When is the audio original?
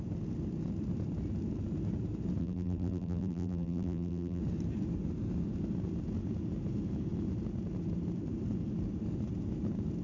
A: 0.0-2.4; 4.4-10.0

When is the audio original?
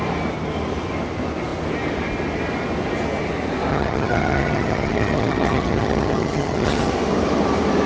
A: 0.0-3.7; 6.9-7.9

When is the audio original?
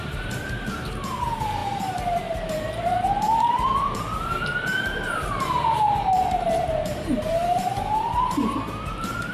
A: none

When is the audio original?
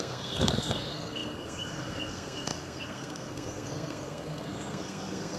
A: none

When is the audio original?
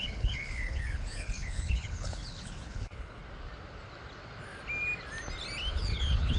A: 3.2-5.7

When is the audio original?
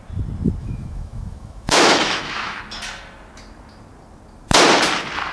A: 0.0-0.6; 2.6-5.3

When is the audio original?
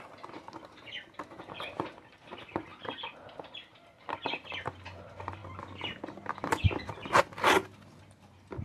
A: 0.0-8.6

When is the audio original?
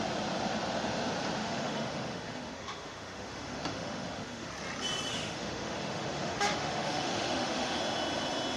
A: 0.0-1.4; 4.5-5.1; 7.8-8.6